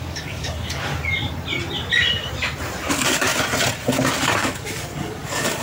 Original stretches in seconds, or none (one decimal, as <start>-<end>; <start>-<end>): 0.9-2.9; 3.3-4.1